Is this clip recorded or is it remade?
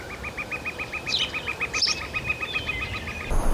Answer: remade